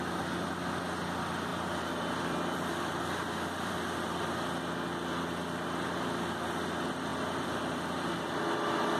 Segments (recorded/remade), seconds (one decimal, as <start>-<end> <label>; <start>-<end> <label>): 0.0-1.5 recorded; 1.5-4.2 remade; 4.2-7.1 recorded; 7.1-8.5 remade; 8.5-9.0 recorded